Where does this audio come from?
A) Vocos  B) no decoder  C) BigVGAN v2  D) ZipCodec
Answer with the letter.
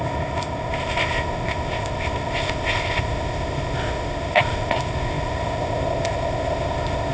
D